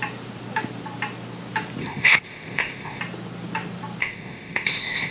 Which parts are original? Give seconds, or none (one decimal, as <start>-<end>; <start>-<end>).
0.0-1.8; 3.0-4.0